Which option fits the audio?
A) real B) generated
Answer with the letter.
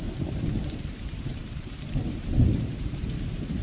B